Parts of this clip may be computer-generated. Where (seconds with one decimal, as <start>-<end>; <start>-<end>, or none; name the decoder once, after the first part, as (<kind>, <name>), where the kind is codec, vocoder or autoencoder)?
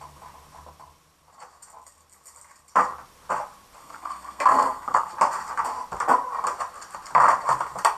3.8-5.1 (codec, SNAC)